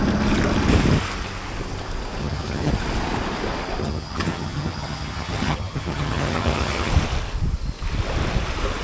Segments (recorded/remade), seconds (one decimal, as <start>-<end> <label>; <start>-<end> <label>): 0.0-2.2 recorded; 2.2-2.7 remade; 2.7-3.8 recorded; 3.8-6.9 remade; 6.9-8.8 recorded